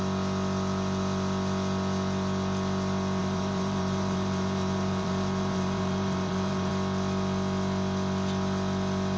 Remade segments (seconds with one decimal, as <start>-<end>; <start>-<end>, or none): 3.2-6.7